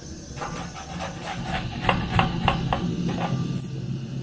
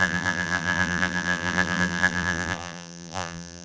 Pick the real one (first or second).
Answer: first